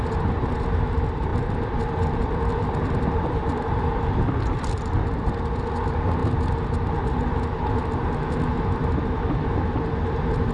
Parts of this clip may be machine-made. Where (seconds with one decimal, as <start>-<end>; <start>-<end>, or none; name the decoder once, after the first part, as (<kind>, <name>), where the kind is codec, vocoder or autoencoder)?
1.3-4.0 (vocoder, BigVGAN v2)